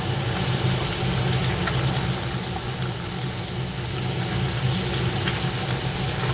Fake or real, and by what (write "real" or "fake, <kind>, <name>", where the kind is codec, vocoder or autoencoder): real